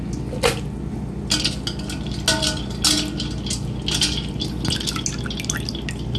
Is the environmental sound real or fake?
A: real